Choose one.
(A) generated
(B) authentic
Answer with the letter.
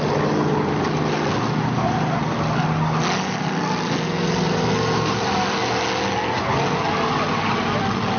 B